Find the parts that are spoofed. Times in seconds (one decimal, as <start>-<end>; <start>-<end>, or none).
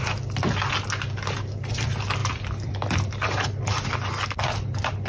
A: none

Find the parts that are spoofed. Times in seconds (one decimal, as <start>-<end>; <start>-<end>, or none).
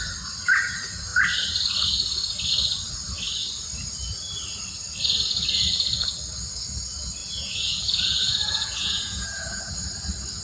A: 7.2-9.6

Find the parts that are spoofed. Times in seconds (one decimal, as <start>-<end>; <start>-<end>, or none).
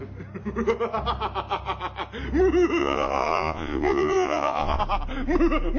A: 2.8-4.8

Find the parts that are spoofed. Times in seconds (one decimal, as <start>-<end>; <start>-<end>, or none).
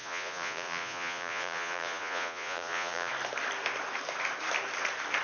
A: 0.0-3.1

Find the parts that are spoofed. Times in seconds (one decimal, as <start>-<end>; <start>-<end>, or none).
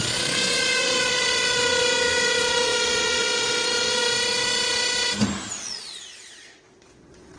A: 0.0-4.0; 5.5-7.4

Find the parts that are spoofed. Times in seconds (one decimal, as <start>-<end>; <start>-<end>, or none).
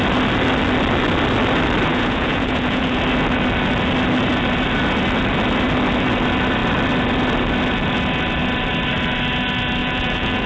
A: 1.9-3.0; 9.8-10.5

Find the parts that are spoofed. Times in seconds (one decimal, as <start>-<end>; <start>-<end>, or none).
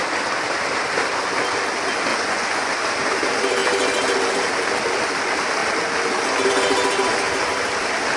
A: 2.1-2.7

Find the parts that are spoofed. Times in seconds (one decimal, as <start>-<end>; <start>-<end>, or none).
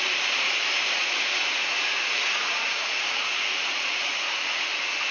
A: 1.0-4.1